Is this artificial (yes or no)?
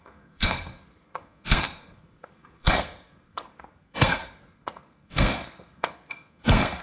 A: yes